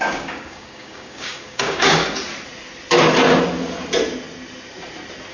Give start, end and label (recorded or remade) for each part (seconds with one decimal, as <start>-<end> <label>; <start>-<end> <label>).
0.0-2.0 remade; 2.0-5.3 recorded

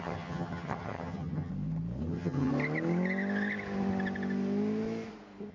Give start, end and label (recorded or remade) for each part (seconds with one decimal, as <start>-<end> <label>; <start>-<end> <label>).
0.0-1.5 remade; 1.5-2.1 recorded; 2.1-2.5 remade; 2.5-5.5 recorded

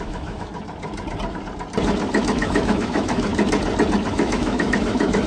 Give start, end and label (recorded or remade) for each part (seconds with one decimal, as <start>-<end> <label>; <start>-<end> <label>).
0.0-0.5 remade; 0.5-2.2 recorded; 2.2-3.3 remade; 3.3-4.1 recorded; 4.1-5.3 remade

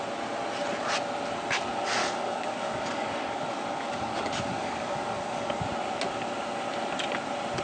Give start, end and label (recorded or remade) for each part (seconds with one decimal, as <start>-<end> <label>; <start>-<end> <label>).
0.0-2.0 recorded; 2.0-5.6 remade; 5.6-7.6 recorded

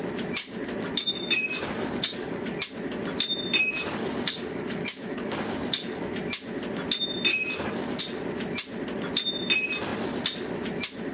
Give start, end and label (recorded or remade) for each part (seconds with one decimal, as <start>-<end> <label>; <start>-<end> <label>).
0.0-0.4 recorded; 0.4-2.6 remade; 2.6-3.6 recorded; 3.6-6.2 remade; 6.2-7.3 recorded; 7.3-8.0 remade; 8.0-11.1 recorded

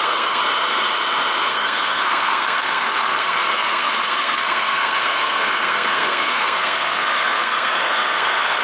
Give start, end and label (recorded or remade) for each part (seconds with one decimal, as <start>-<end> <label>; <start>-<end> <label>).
0.0-0.4 remade; 0.4-1.5 recorded; 1.5-8.6 remade

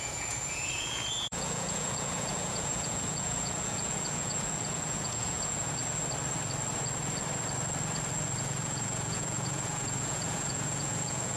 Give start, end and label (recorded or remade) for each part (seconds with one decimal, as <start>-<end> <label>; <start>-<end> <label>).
0.0-5.8 remade; 5.8-8.4 recorded; 8.4-11.4 remade